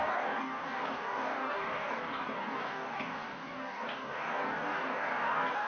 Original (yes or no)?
no